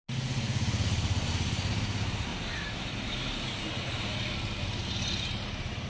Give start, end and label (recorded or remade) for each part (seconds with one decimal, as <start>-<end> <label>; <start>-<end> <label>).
0.0-5.9 recorded